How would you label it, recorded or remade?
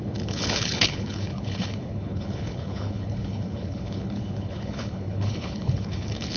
remade